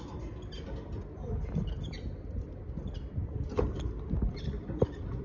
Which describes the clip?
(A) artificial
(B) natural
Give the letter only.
B